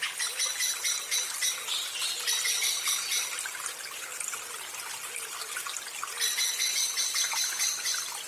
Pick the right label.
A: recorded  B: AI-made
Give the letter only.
A